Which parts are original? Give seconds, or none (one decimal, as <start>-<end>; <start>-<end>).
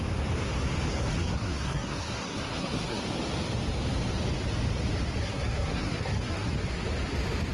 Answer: 0.0-0.9; 3.0-5.2; 6.5-7.5